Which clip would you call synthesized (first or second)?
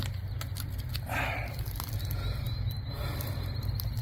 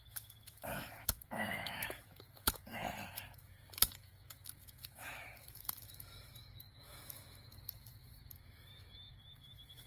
second